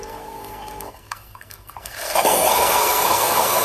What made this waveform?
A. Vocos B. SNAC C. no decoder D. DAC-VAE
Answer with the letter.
B